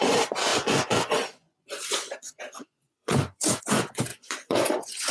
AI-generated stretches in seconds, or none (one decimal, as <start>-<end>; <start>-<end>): 0.0-5.1